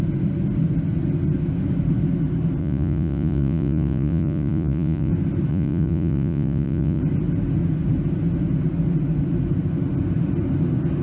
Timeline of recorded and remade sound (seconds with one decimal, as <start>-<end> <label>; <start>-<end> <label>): 0.0-2.6 recorded; 2.6-5.1 remade; 5.1-5.5 recorded; 5.5-7.0 remade; 7.0-11.0 recorded